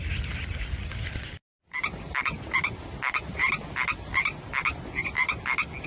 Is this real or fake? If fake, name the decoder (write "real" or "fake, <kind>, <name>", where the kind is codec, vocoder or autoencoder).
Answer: real